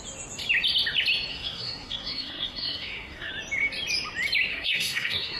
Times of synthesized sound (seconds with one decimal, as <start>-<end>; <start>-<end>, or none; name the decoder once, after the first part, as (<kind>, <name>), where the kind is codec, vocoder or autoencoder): 1.3-3.3 (codec, SNAC); 4.5-5.4